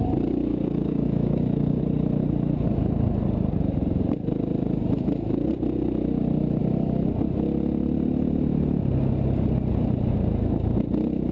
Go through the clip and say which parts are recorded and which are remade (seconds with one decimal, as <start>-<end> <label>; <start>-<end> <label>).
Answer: 0.0-0.5 recorded; 0.5-1.8 remade; 1.8-11.3 recorded